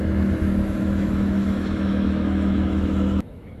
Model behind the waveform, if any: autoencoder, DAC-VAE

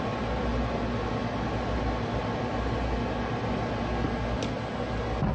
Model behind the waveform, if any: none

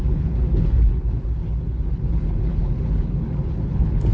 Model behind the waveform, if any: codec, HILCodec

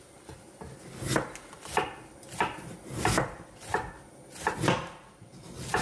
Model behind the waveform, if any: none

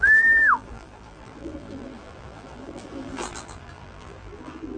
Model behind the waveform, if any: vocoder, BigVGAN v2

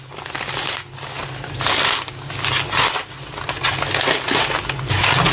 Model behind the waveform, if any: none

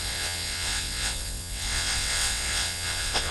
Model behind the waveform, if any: vocoder, WaveNeXt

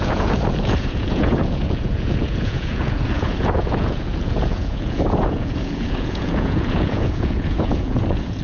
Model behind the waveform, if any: vocoder, Vocos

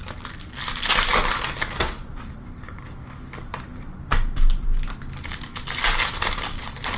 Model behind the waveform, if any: none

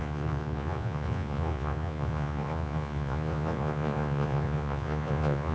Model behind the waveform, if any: vocoder, Vocos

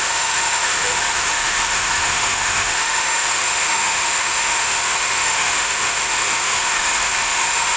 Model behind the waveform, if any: autoencoder, DAC-VAE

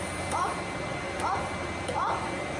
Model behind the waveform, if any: none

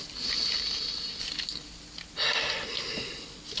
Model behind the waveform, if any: none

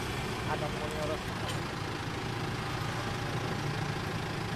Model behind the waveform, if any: none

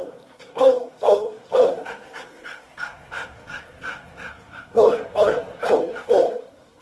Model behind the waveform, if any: codec, SNAC